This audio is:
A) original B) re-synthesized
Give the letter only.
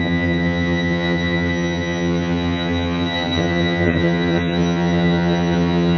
B